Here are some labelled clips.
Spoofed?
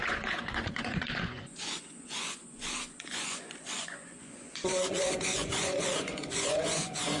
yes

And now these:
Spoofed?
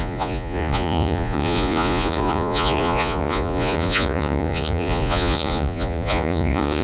yes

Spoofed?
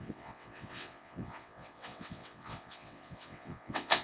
yes